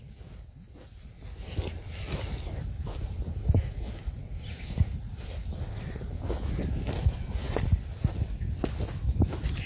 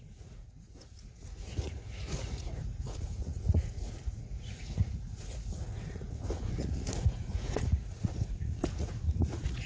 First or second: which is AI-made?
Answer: second